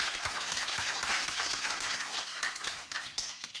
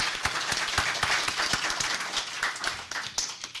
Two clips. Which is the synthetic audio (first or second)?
first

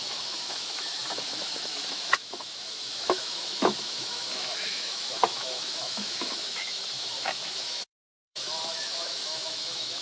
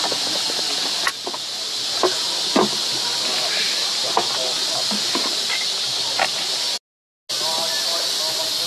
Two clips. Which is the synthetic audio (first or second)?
first